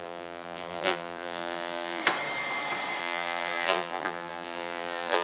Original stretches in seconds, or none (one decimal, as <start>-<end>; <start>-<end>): 2.0-3.0